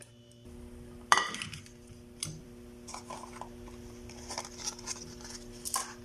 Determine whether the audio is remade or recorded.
remade